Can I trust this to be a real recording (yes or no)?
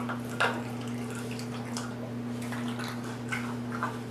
yes